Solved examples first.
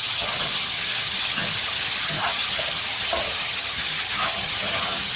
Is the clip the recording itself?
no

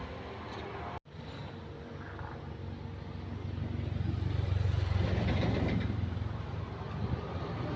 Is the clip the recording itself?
yes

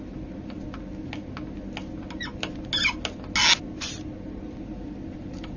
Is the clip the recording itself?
yes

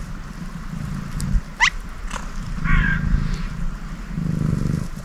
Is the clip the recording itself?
no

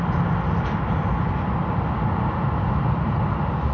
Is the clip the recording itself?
yes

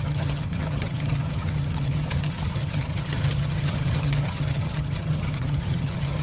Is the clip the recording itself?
no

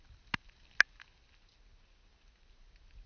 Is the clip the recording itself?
yes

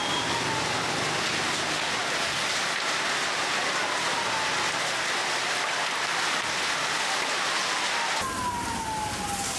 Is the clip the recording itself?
yes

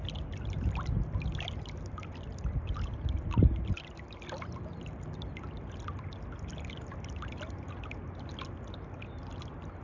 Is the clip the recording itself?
yes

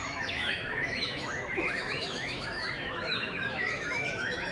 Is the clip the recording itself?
no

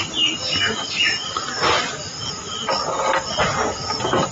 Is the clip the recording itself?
yes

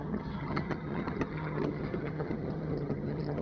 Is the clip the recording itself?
no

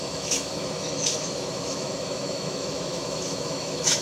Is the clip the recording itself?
no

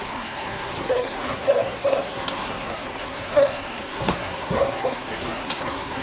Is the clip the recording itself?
no